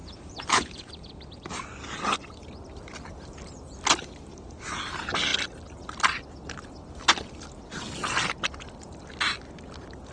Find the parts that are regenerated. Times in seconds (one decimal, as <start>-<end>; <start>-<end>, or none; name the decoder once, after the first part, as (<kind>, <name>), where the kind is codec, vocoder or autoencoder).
0.0-0.9 (vocoder, BigVGAN v2); 4.3-4.8